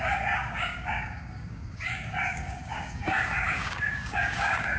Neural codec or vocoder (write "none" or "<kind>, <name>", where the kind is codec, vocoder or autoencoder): codec, DAC